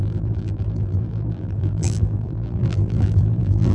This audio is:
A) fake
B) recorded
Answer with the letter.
A